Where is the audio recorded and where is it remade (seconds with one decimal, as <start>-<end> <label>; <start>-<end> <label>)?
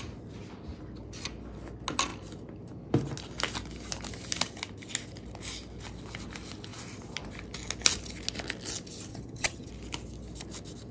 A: 0.0-9.1 recorded; 9.1-9.7 remade; 9.7-10.9 recorded